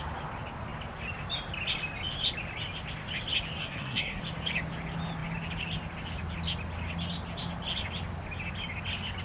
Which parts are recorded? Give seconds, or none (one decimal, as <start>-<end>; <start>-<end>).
0.0-3.6; 4.2-9.2